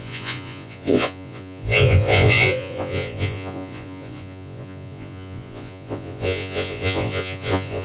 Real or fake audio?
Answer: fake